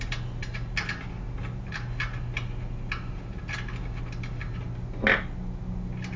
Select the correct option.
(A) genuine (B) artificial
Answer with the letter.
A